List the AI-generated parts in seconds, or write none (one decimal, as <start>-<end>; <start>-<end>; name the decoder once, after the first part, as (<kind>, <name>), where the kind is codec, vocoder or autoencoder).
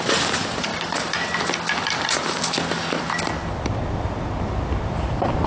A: none